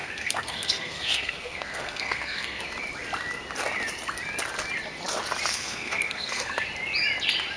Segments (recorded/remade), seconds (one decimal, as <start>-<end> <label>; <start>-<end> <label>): 0.0-2.6 remade; 2.6-5.5 recorded; 5.5-6.5 remade; 6.5-7.6 recorded